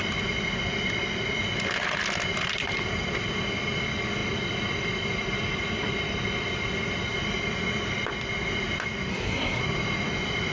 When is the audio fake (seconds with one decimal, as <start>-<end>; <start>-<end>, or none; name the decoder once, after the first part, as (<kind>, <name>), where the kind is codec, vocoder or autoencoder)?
9.1-9.6 (codec, SNAC)